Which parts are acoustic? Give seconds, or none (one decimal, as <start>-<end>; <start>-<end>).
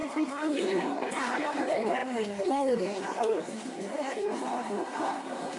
none